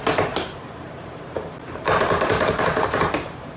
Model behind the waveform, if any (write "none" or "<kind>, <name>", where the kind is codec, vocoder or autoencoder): vocoder, BigVGAN v2